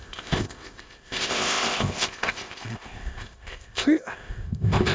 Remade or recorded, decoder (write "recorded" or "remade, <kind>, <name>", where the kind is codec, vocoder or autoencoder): remade, codec, ZipCodec